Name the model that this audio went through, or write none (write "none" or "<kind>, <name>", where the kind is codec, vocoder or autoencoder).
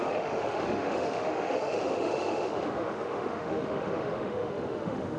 autoencoder, DAC-VAE